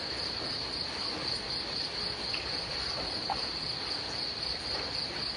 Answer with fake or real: real